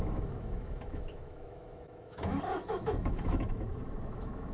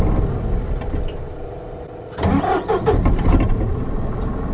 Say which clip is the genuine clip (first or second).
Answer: second